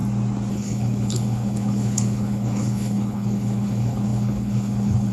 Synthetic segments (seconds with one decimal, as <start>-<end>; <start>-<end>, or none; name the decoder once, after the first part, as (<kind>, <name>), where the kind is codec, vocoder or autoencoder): 0.5-5.1 (codec, HILCodec)